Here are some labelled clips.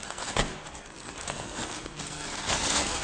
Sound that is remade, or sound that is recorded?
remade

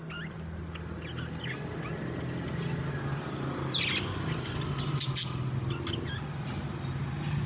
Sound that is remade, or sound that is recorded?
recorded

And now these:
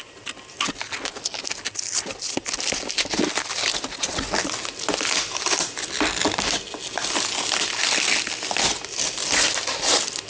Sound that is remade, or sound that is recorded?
recorded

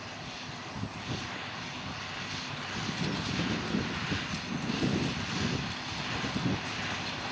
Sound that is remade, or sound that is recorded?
recorded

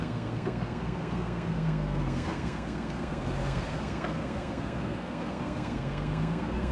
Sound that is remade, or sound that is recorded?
remade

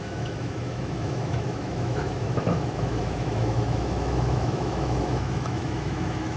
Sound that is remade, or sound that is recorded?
remade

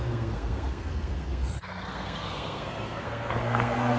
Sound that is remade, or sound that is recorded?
remade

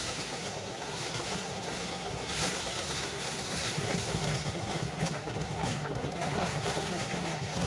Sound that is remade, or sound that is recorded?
remade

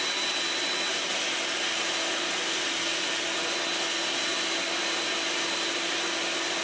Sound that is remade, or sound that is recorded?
recorded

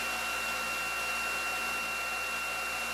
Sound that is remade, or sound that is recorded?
recorded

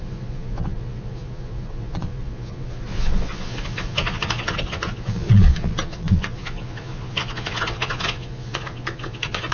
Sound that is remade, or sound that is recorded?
remade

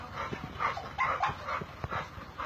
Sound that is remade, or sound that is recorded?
recorded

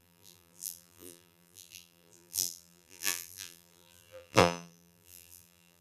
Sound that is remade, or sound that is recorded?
remade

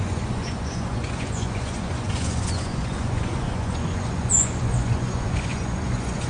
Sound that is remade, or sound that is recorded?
remade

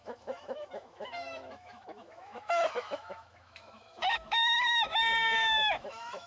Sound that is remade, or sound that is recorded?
remade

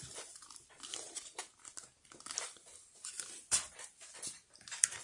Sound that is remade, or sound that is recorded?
remade